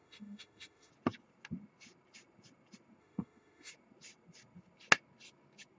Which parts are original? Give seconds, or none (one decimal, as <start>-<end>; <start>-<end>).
0.9-3.0; 3.7-5.8